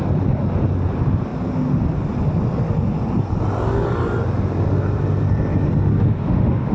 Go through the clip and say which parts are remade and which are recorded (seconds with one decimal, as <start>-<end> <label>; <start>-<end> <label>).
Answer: 0.0-5.9 recorded; 5.9-6.7 remade